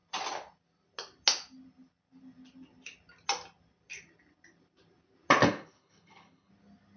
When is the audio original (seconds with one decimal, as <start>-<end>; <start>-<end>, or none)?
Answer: 0.0-5.4; 6.5-7.0